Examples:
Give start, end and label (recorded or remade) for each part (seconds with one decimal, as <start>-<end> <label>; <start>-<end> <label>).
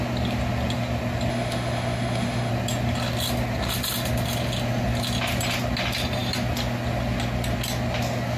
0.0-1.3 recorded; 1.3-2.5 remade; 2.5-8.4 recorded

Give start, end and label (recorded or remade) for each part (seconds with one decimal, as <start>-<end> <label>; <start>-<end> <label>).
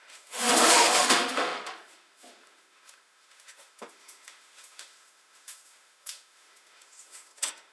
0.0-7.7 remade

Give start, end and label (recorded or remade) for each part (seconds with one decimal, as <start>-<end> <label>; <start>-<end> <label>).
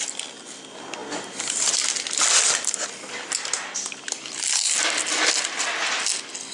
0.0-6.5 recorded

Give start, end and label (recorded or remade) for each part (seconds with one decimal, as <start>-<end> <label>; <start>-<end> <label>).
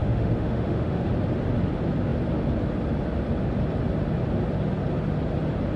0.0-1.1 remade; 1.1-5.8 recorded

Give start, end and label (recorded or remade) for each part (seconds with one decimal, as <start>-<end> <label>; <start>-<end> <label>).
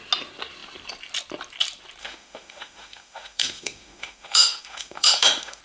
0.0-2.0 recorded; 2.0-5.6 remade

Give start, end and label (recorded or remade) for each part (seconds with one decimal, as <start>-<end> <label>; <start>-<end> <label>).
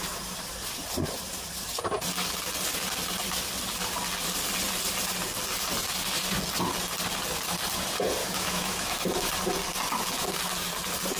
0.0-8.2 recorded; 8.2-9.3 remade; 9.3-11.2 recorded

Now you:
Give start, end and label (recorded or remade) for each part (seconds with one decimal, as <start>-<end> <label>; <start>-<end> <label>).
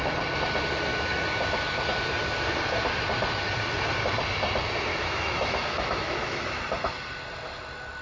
0.0-0.9 recorded; 0.9-1.8 remade; 1.8-4.9 recorded; 4.9-6.6 remade; 6.6-8.0 recorded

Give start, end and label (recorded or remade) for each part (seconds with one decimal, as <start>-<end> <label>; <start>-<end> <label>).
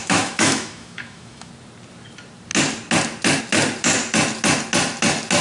0.0-1.5 remade; 1.5-5.4 recorded